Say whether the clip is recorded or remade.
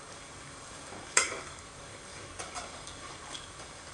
remade